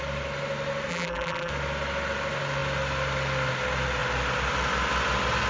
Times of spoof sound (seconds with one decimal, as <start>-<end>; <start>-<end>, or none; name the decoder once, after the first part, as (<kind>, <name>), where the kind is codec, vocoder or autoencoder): 0.9-1.5 (vocoder, BigVGAN v2)